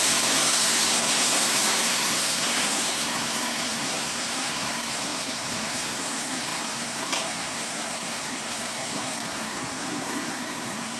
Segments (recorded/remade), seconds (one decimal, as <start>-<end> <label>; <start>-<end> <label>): 0.0-11.0 remade